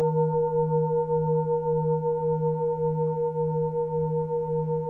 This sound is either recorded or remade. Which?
recorded